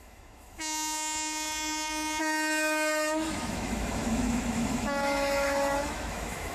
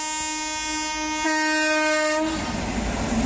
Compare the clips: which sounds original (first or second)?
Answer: second